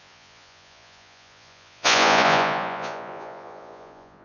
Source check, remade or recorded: remade